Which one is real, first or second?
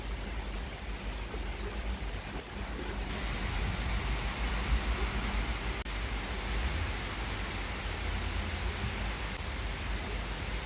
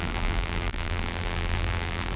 first